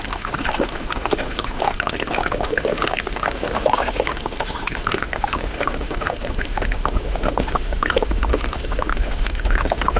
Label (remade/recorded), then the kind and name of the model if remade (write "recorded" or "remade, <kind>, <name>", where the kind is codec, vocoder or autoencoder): remade, autoencoder, DAC-VAE